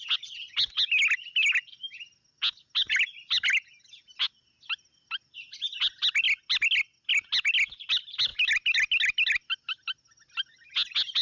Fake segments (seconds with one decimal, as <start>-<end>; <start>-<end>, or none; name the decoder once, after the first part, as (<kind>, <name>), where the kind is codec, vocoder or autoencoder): none